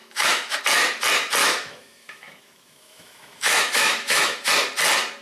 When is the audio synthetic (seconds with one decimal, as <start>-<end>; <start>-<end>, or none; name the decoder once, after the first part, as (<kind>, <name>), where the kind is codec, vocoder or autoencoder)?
0.0-0.6 (autoencoder, DAC-VAE); 1.4-4.5